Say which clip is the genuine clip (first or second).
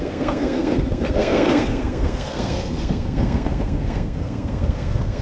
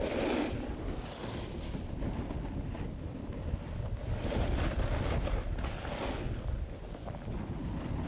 second